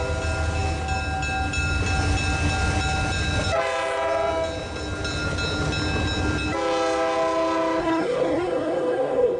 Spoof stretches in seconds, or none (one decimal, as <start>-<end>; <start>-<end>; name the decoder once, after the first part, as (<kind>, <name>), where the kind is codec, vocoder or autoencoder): 7.8-9.4 (codec, SNAC)